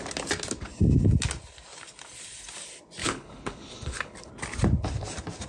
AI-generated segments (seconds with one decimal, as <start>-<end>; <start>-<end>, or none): 3.0-4.3